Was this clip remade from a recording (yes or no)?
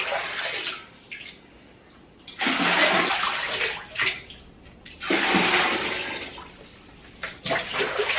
no